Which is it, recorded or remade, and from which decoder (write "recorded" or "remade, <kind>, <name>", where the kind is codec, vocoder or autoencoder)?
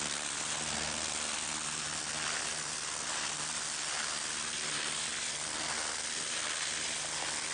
recorded